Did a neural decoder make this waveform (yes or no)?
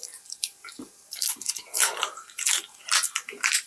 yes